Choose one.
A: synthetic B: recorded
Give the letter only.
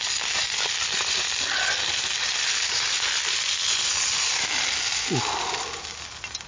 A